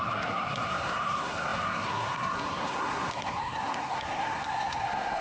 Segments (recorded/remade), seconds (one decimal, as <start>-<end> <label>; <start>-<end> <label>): 0.0-5.2 remade